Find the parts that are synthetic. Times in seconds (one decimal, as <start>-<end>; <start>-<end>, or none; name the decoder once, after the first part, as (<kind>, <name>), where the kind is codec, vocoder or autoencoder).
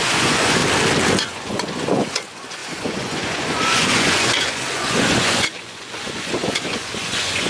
0.0-0.6 (vocoder, Vocos); 1.2-7.5